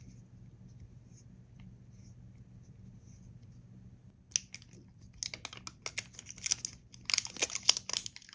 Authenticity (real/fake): real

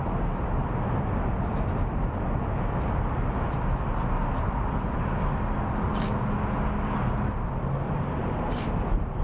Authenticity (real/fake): real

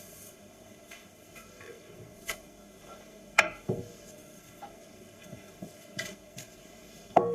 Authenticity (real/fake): fake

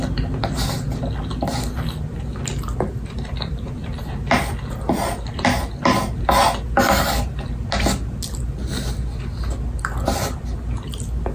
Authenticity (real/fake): real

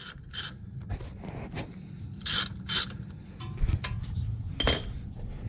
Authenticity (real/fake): real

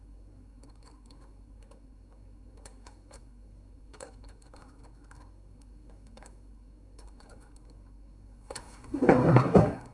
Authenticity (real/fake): fake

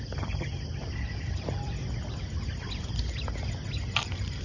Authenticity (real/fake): real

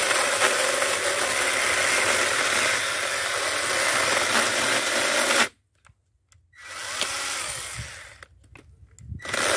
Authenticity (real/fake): real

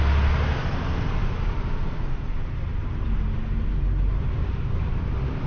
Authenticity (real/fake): real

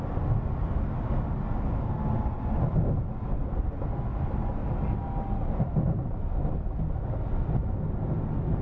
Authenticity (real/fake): real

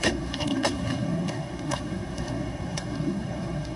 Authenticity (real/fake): fake